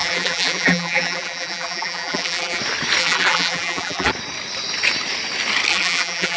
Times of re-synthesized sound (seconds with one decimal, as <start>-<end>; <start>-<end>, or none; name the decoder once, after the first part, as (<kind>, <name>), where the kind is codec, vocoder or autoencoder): 0.0-2.6 (vocoder, BigVGAN v2); 3.0-4.1; 5.7-6.4